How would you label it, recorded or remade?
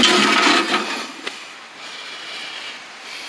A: recorded